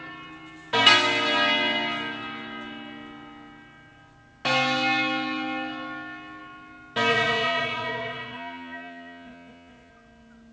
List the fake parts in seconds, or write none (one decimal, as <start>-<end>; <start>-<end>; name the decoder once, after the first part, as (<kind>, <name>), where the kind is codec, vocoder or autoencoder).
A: 7.1-9.9 (vocoder, Vocos)